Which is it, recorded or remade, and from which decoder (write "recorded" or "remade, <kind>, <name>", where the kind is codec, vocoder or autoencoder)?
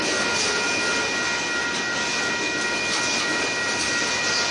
recorded